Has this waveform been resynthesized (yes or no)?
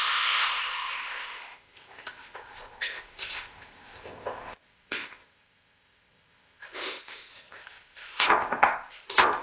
yes